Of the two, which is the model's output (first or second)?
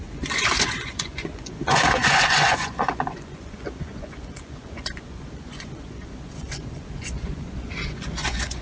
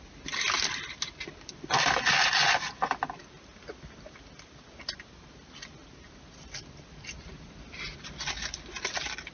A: first